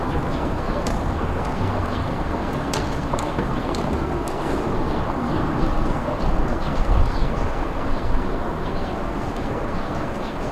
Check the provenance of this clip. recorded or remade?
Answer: remade